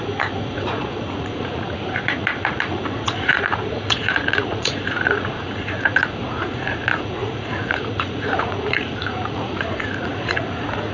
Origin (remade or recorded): remade